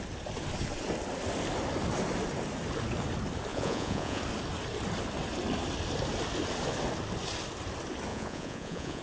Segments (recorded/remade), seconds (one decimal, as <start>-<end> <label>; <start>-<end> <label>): 0.0-3.5 recorded; 3.5-4.2 remade; 4.2-8.1 recorded; 8.1-9.0 remade